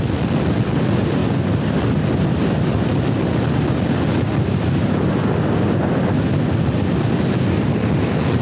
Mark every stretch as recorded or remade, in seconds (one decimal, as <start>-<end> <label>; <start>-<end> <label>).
0.0-8.4 recorded